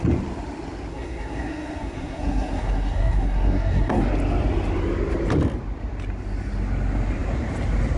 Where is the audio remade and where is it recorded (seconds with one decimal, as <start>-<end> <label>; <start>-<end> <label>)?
0.0-0.9 recorded; 0.9-4.0 remade; 4.0-8.0 recorded

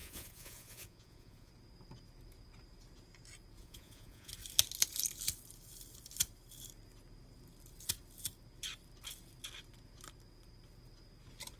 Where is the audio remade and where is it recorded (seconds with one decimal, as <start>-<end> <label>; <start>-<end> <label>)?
0.0-1.5 remade; 1.5-3.6 recorded; 3.6-4.3 remade; 4.3-11.6 recorded

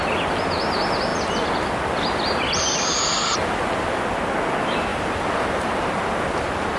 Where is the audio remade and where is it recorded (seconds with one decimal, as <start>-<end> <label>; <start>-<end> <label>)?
0.0-6.8 recorded

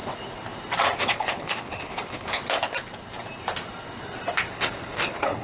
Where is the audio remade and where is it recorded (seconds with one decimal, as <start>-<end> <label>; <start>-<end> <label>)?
0.0-1.0 recorded; 1.0-2.4 remade; 2.4-4.5 recorded; 4.5-5.4 remade